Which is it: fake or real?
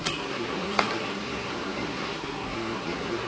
fake